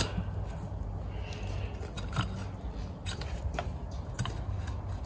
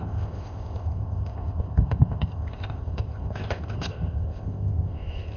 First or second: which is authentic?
first